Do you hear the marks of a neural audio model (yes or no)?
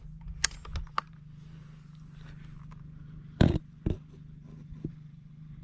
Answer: no